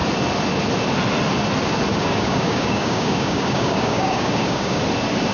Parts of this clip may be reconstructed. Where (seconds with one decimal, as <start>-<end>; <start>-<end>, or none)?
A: 1.9-4.8